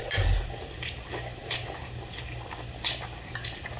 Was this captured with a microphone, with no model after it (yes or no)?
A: yes